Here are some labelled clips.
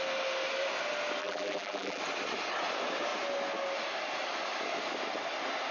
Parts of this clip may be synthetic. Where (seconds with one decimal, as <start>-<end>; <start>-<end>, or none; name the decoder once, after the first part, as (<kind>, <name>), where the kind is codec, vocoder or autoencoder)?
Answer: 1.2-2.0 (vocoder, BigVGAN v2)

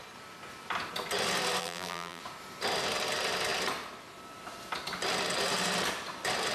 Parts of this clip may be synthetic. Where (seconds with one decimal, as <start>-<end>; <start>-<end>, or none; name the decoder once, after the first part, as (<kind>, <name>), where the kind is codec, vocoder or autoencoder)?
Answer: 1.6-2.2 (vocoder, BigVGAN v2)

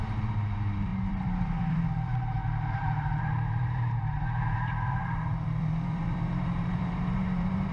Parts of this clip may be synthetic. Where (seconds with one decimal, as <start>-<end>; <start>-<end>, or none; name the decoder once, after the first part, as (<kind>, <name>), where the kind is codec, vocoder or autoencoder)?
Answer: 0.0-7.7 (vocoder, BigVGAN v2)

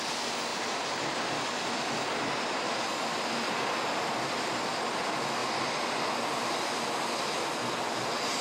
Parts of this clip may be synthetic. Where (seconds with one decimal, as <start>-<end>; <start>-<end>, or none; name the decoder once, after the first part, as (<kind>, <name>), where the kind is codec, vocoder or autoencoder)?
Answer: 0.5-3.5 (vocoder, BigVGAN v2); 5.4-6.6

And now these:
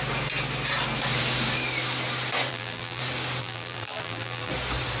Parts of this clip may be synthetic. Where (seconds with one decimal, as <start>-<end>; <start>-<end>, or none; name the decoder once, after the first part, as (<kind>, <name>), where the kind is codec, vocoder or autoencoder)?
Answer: 2.5-3.0 (vocoder, BigVGAN v2); 3.4-4.5

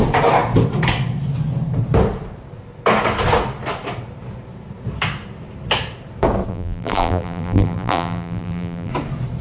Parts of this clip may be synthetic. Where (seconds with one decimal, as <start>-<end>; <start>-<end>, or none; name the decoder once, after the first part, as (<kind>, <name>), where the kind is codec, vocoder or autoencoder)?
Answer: 6.5-8.9 (vocoder, BigVGAN v2)

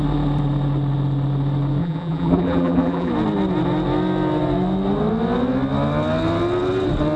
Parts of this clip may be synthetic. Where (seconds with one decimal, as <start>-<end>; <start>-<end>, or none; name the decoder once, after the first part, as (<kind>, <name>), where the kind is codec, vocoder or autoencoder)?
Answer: 1.8-3.1 (vocoder, BigVGAN v2)